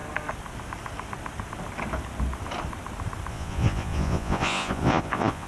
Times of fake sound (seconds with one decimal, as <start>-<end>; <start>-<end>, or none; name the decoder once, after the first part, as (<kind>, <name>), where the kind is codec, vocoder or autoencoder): 3.3-5.5 (vocoder, Vocos)